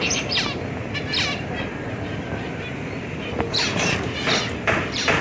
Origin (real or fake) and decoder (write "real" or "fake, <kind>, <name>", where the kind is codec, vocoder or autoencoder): real